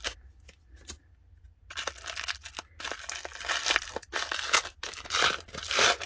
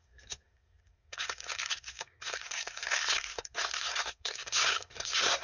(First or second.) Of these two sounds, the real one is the first